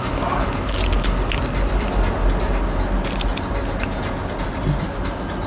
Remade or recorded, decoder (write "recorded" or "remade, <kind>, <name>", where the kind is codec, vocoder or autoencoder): recorded